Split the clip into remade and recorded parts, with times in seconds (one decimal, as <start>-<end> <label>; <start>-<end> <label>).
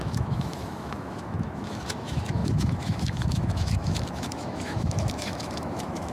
0.0-6.1 remade